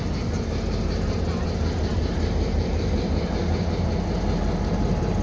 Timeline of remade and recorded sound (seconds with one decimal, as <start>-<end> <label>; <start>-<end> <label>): 0.0-5.2 recorded

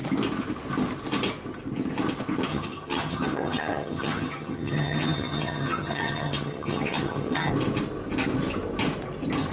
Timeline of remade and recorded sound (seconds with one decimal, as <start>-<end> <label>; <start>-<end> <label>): 0.0-2.5 recorded; 2.5-7.5 remade; 7.5-9.5 recorded

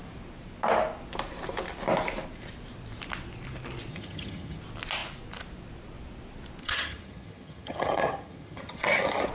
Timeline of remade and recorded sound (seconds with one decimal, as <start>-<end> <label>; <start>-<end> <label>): 0.0-3.9 recorded; 3.9-4.6 remade; 4.6-6.6 recorded; 6.6-9.3 remade